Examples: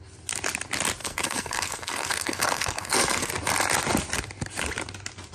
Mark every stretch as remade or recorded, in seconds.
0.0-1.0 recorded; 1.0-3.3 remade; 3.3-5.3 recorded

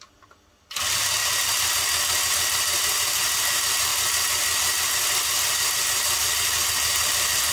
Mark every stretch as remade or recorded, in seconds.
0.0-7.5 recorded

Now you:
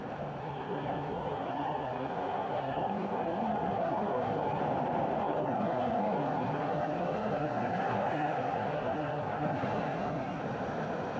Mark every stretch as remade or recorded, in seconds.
0.0-0.4 recorded; 0.4-4.6 remade; 4.6-5.2 recorded; 5.2-10.4 remade; 10.4-11.2 recorded